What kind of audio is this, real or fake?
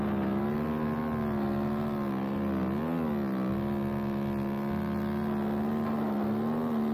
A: real